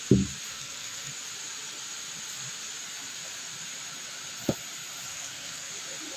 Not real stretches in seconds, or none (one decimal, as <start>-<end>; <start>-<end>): 0.5-1.1; 5.1-5.7